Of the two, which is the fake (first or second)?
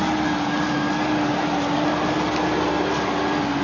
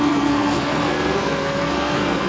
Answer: second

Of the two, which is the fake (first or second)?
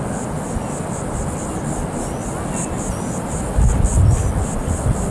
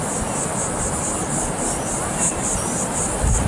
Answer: second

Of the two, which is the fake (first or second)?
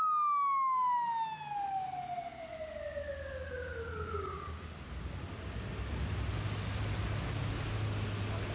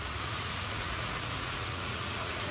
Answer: second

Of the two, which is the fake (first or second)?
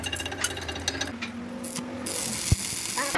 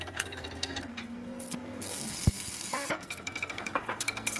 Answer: second